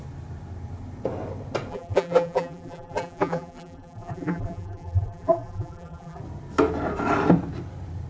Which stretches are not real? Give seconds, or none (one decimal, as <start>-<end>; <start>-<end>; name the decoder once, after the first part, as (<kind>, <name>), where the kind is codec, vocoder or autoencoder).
1.7-6.2 (vocoder, BigVGAN v2)